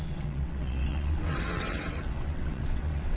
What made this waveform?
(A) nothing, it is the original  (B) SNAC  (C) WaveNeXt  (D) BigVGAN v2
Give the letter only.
C